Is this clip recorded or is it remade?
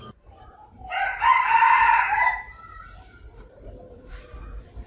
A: remade